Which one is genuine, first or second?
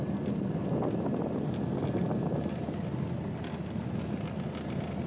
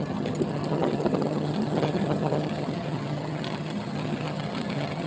first